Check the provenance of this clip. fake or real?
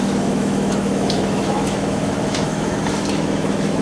fake